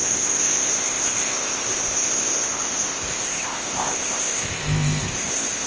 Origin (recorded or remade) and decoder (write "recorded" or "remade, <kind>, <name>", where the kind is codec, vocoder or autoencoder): remade, codec, ZipCodec